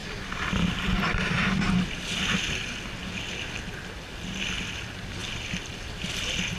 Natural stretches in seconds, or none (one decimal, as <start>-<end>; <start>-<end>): 0.0-6.6